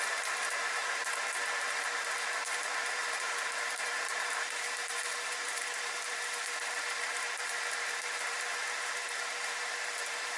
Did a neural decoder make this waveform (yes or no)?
yes